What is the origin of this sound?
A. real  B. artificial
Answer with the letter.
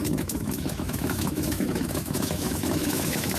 B